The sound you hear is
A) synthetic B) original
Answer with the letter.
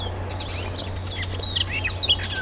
B